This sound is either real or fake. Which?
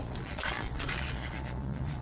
fake